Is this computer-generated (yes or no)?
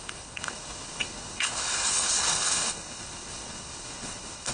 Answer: yes